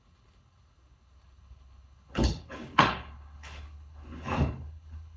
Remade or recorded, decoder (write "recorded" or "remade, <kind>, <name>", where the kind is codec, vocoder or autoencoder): remade, codec, HILCodec